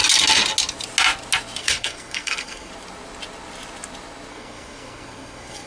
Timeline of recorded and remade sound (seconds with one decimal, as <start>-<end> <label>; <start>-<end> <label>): 0.0-1.6 recorded; 1.6-2.7 remade; 2.7-4.3 recorded; 4.3-5.7 remade